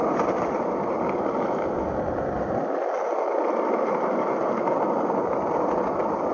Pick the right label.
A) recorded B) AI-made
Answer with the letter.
A